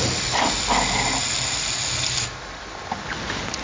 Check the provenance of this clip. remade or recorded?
recorded